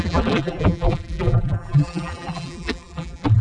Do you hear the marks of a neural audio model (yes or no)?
yes